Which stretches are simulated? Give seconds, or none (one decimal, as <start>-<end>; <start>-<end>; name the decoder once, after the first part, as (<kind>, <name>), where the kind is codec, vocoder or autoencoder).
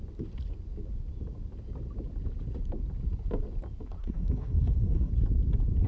4.0-5.1 (codec, SNAC)